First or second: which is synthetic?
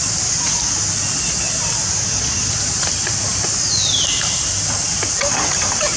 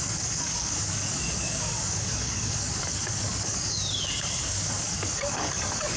second